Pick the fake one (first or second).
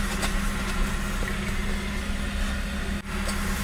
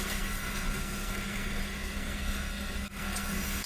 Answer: second